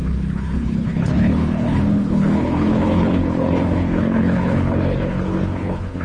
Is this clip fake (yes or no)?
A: yes